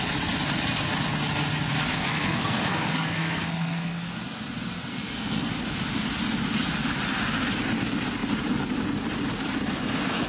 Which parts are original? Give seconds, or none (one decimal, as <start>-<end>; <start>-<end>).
0.0-1.9; 4.1-4.9; 5.5-10.3